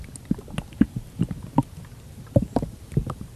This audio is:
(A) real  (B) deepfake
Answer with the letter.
A